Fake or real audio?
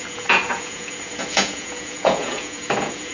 fake